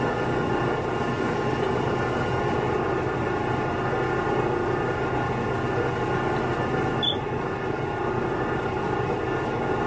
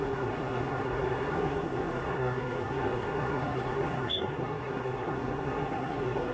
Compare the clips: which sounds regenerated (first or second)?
second